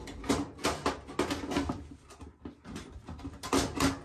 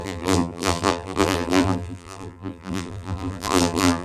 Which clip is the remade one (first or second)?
second